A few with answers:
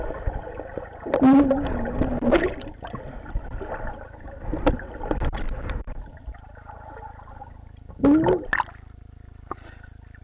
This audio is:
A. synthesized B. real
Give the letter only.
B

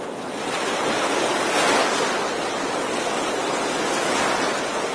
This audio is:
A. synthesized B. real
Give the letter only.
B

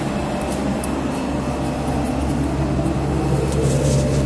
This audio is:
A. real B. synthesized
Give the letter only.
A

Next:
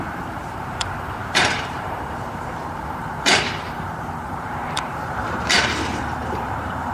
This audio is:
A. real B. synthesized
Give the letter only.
B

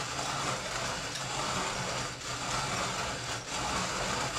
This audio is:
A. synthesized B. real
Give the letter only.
B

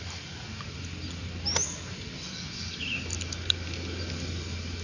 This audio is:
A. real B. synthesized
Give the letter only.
A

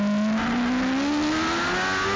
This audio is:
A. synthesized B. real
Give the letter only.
B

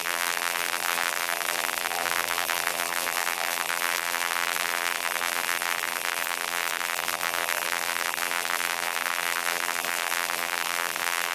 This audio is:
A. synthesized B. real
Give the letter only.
A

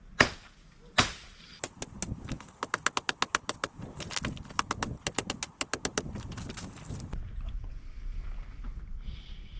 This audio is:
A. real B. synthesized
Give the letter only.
A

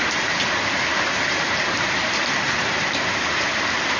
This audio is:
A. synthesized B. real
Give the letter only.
A